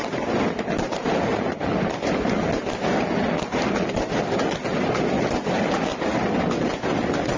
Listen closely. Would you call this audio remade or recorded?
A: recorded